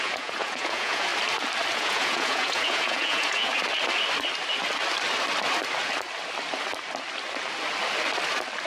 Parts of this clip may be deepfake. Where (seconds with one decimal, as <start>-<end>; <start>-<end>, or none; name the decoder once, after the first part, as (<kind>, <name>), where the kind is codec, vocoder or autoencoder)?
0.0-1.1 (vocoder, Vocos); 1.7-3.5

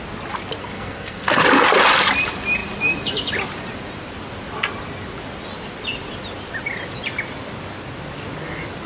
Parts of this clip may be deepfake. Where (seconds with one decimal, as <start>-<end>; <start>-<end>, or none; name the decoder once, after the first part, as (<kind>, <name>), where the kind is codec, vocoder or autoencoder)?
0.6-1.4 (codec, SNAC)

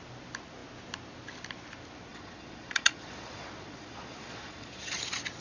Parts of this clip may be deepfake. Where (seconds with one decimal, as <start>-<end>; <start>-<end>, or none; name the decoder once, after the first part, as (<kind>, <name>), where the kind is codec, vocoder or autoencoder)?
2.1-5.0 (vocoder, Vocos)

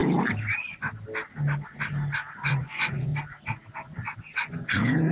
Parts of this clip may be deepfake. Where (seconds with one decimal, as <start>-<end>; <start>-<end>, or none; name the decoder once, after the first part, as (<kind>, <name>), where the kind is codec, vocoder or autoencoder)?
2.3-3.1 (vocoder, Vocos); 3.7-5.1